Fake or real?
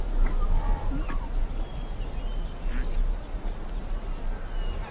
real